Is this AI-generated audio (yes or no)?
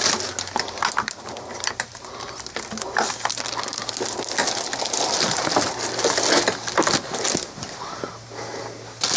no